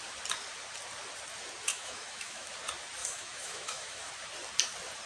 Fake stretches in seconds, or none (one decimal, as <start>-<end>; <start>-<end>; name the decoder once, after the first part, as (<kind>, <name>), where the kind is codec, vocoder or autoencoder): 1.7-2.5 (autoencoder, DAC-VAE); 3.0-4.1